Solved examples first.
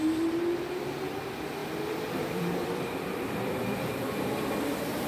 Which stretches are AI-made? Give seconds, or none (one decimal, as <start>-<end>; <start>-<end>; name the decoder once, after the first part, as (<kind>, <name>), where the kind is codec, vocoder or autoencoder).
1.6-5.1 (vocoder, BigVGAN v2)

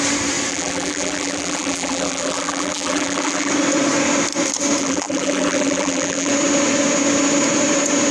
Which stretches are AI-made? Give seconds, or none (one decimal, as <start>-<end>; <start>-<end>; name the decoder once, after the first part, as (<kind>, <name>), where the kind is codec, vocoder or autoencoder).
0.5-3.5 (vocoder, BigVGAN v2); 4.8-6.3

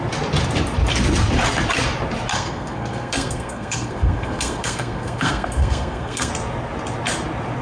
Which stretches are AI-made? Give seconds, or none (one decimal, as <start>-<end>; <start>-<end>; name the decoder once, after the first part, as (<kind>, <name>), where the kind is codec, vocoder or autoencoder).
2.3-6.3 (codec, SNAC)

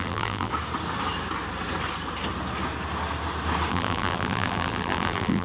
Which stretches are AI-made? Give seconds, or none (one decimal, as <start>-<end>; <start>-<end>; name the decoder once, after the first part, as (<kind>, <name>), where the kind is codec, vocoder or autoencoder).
0.0-0.5 (vocoder, BigVGAN v2); 3.7-5.4

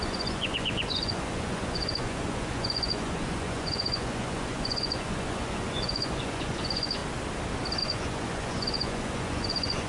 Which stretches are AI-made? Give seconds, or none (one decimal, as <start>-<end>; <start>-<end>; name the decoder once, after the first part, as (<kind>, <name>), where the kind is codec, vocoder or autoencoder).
0.0-7.0 (vocoder, Vocos); 7.8-9.9

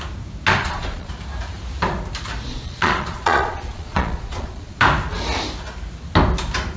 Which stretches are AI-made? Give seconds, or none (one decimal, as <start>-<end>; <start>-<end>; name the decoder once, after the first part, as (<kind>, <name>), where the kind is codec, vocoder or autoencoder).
0.6-1.1 (vocoder, Vocos); 2.5-4.8

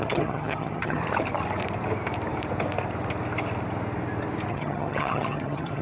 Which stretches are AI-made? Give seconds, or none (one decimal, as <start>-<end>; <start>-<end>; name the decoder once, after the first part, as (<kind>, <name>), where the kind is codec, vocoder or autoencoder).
0.0-1.0 (vocoder, HiFi-GAN); 4.5-5.8